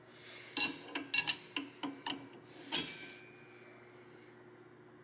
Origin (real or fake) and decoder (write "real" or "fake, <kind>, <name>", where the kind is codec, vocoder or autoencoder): real